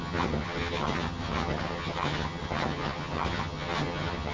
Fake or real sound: fake